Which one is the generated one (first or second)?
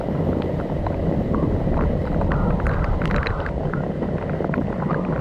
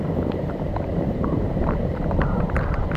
second